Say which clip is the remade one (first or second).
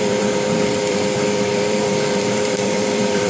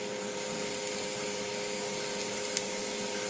first